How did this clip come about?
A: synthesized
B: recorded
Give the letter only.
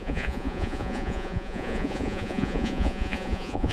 A